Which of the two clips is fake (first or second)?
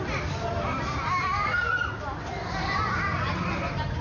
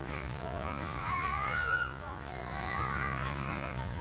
second